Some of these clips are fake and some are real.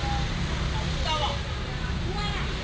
real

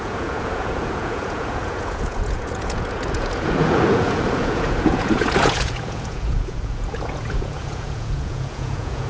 fake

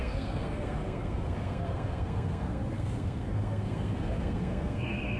fake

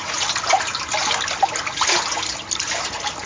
real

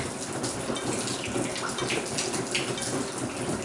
real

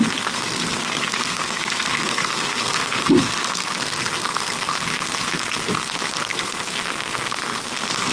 fake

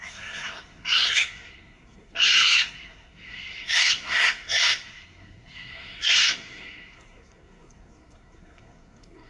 fake